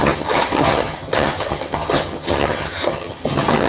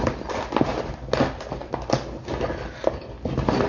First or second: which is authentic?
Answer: second